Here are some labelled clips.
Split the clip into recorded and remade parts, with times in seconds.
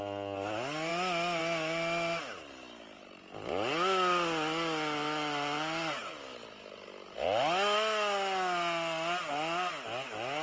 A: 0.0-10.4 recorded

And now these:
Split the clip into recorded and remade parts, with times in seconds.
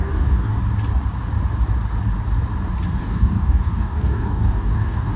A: 0.0-0.6 remade; 0.6-3.0 recorded; 3.0-5.2 remade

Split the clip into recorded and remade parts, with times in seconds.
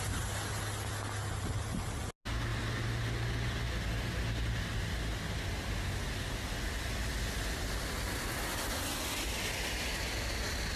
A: 0.0-10.8 recorded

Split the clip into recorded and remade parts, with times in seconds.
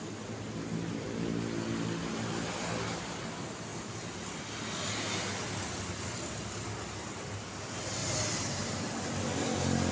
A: 0.0-9.9 recorded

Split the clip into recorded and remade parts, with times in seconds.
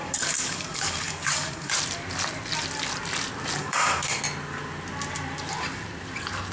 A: 0.0-1.7 remade; 1.7-3.6 recorded; 3.6-4.2 remade; 4.2-6.5 recorded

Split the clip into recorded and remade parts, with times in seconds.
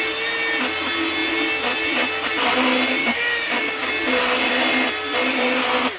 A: 0.0-3.0 recorded; 3.0-3.9 remade; 3.9-6.0 recorded